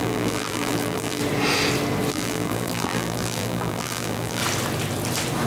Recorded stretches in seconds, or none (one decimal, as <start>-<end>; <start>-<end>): 1.2-2.1; 4.4-5.5